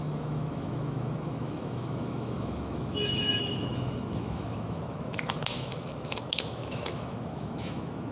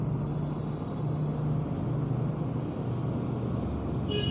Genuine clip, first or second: second